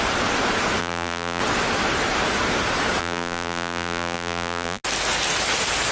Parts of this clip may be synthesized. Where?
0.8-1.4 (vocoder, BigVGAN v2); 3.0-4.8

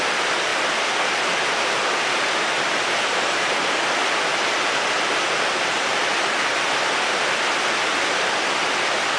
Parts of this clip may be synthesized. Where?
none

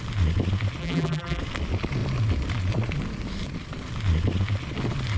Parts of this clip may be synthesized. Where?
0.8-1.4 (vocoder, BigVGAN v2)

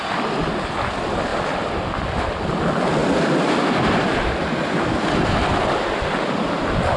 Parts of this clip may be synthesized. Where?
none

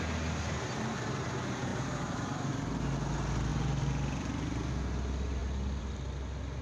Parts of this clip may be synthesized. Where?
1.7-2.5 (vocoder, BigVGAN v2); 3.5-4.7; 5.4-6.1

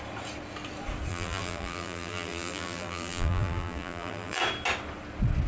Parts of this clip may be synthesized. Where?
1.1-4.4 (vocoder, BigVGAN v2)

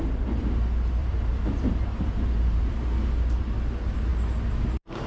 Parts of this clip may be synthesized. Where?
1.0-2.7 (vocoder, BigVGAN v2)

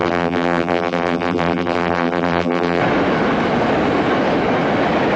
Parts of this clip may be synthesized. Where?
0.0-2.8 (vocoder, BigVGAN v2)